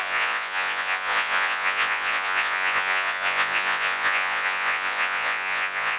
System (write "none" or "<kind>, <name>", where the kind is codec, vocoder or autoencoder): vocoder, Vocos